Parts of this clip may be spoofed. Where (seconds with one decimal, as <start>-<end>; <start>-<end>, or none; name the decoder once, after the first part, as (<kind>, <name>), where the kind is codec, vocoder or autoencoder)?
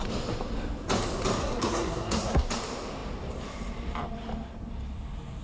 1.4-2.5 (codec, SNAC)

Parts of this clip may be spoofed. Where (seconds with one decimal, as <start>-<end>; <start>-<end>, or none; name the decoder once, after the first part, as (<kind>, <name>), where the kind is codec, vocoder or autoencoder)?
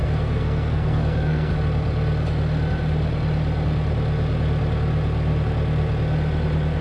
0.0-1.5 (codec, SNAC)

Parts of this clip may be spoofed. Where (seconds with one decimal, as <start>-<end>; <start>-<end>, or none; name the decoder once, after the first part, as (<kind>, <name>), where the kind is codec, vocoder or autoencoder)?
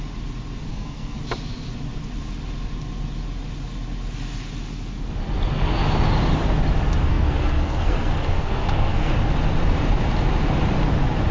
0.7-1.2 (codec, SNAC); 7.1-9.1